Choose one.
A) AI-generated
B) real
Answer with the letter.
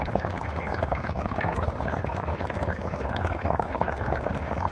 A